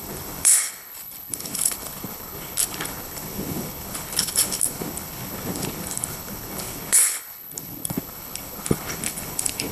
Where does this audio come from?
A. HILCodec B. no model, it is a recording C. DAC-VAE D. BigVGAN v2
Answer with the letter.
A